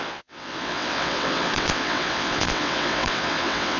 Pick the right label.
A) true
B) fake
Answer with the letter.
B